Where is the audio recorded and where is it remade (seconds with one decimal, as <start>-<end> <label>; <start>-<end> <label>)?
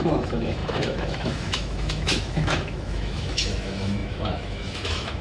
0.0-5.2 remade